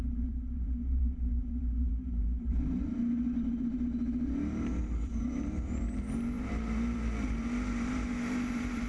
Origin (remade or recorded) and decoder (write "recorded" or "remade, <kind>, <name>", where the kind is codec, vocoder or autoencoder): remade, vocoder, BigVGAN v2